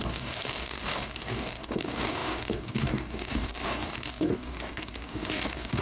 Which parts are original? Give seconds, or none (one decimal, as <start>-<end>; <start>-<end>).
none